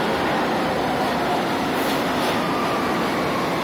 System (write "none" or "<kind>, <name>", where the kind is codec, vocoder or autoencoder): none